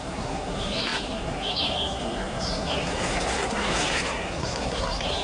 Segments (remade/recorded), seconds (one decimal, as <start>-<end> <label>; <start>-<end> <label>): 0.0-5.2 remade